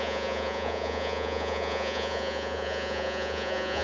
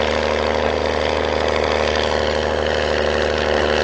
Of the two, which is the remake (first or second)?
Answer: first